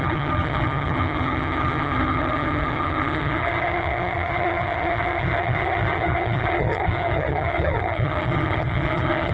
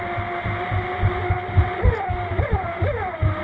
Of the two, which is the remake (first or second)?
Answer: first